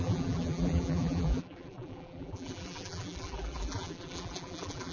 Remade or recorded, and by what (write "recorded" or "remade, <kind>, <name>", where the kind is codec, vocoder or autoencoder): remade, vocoder, BigVGAN v2